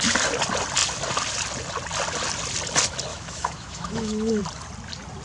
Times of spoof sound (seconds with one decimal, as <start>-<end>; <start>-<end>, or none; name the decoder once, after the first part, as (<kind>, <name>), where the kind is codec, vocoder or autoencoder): 3.1-4.4 (autoencoder, DAC-VAE)